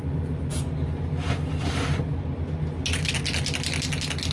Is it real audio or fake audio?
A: real